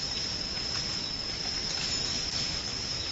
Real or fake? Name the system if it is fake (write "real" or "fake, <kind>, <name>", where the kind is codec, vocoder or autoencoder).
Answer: real